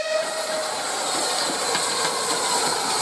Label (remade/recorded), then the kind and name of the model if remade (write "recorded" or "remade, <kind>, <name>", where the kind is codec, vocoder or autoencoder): recorded